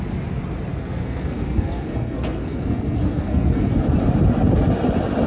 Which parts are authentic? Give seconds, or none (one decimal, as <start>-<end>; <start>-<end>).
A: 0.0-0.7; 3.7-5.3